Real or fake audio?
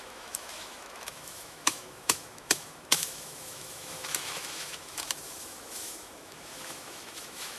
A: fake